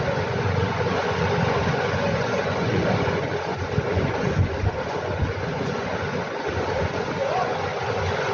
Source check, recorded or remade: remade